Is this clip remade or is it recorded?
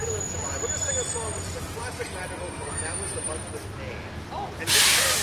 recorded